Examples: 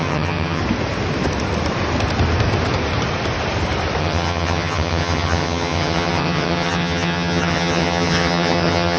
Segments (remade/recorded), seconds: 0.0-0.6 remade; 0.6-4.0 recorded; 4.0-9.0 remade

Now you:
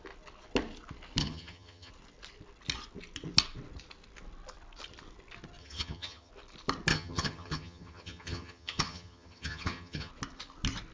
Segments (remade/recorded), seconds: 0.0-1.2 recorded; 1.2-1.9 remade; 1.9-5.6 recorded; 5.6-6.3 remade; 6.3-6.9 recorded; 6.9-10.1 remade; 10.1-10.9 recorded

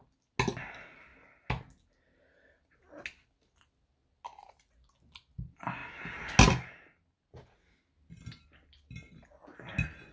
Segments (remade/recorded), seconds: 0.0-10.1 recorded

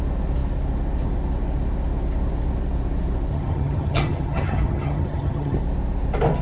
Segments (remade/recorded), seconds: 0.0-3.3 recorded; 3.3-5.6 remade; 5.6-6.4 recorded

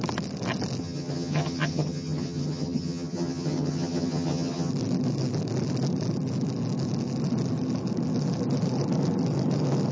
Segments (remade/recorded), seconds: 0.0-0.8 recorded; 0.8-4.7 remade; 4.7-9.9 recorded